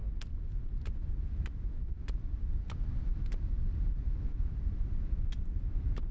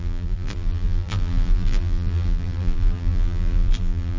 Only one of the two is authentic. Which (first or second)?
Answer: first